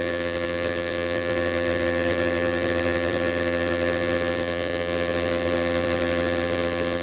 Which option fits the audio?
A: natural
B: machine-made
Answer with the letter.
B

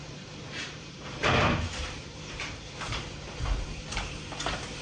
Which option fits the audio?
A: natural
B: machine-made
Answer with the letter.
B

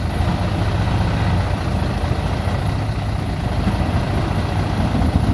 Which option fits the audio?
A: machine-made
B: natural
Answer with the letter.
B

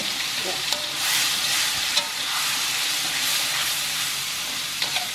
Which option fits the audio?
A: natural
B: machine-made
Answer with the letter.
B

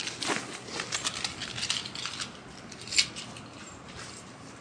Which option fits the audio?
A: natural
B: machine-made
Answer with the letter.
A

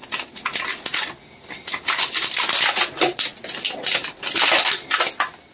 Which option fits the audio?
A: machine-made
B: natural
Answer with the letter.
B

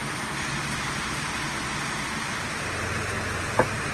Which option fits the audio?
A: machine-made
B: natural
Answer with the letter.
B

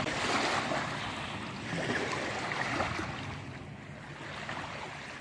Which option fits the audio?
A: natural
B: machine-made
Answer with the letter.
A